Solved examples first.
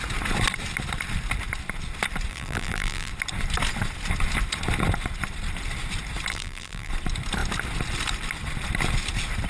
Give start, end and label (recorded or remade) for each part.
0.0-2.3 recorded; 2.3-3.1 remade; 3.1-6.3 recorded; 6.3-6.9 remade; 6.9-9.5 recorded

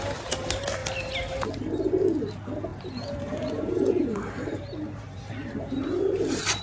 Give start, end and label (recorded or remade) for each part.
0.0-2.7 recorded; 2.7-6.6 remade

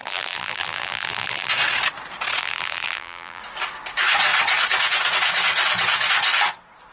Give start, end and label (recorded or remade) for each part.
0.0-1.5 remade; 1.5-2.4 recorded; 2.4-3.4 remade; 3.4-6.9 recorded